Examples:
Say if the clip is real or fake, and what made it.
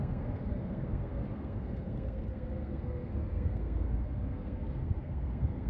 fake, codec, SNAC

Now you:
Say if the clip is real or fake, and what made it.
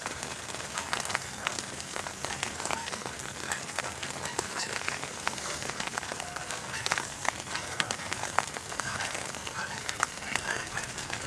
fake, codec, SNAC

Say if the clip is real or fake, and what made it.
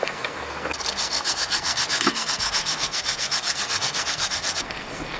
fake, codec, SNAC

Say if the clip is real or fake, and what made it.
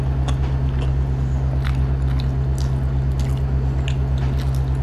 real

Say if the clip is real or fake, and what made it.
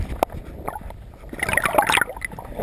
real